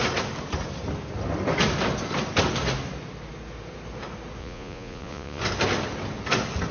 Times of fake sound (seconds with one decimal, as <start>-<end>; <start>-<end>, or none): 4.4-5.4